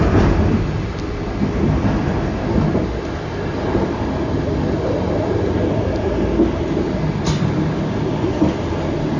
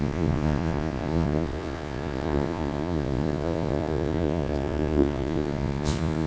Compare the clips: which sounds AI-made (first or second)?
second